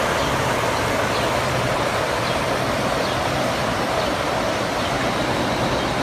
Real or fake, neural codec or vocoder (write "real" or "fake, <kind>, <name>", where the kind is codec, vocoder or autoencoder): real